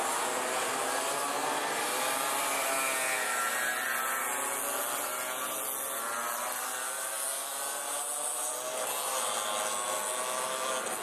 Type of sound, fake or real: real